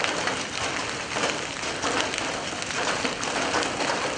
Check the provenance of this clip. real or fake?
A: real